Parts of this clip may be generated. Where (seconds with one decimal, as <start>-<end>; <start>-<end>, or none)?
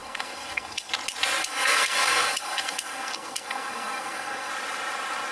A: 0.0-0.9; 1.4-4.5